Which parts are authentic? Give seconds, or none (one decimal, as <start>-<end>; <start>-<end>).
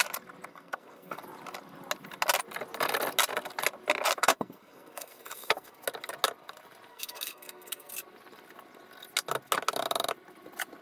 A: 0.0-0.5; 1.2-4.2; 5.8-6.9; 7.9-10.8